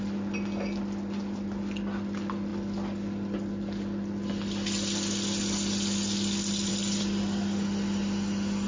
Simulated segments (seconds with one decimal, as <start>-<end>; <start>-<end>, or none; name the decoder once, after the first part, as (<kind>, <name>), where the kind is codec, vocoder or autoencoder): none